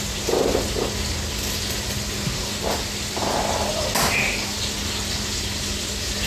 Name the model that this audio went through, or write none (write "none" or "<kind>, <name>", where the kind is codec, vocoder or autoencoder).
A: none